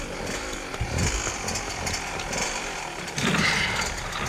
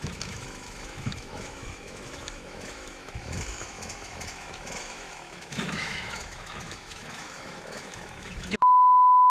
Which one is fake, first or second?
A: second